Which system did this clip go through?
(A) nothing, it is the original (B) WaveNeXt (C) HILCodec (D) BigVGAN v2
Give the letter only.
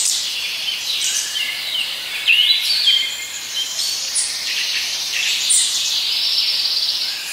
D